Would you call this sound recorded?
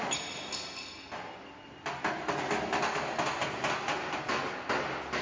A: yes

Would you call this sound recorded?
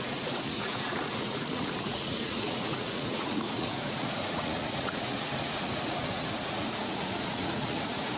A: no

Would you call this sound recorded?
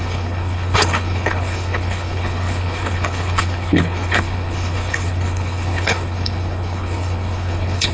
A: no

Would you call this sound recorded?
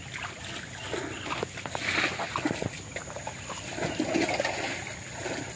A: yes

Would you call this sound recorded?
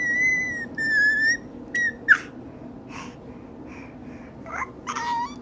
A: yes